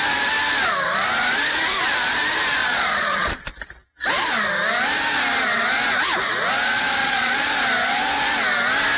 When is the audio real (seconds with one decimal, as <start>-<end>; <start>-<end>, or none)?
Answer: 0.0-2.6; 3.4-7.0; 7.5-9.0